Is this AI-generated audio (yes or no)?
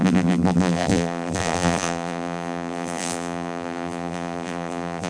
yes